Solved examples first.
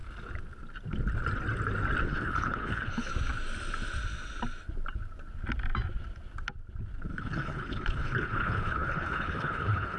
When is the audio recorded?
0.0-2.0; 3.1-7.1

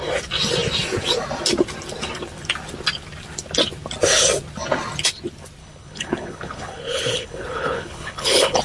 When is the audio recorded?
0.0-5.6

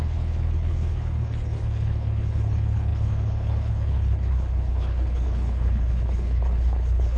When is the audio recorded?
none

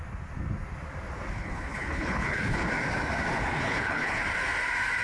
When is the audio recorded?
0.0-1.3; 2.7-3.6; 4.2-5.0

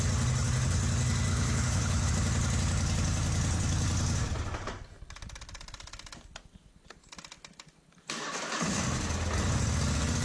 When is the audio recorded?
0.0-1.3; 2.1-10.2

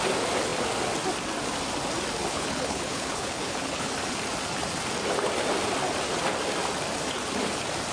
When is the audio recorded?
0.0-2.2; 3.9-7.9

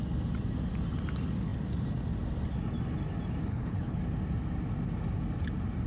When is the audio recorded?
0.0-3.5; 4.0-5.9

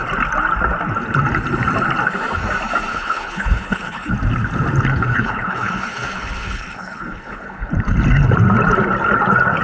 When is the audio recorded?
0.0-2.9; 4.1-4.9; 7.7-9.6